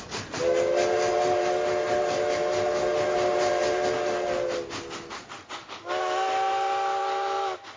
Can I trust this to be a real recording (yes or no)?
yes